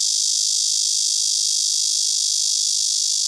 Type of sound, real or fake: real